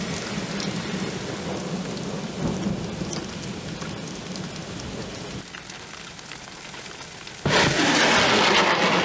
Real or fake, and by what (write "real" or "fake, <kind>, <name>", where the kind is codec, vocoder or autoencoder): real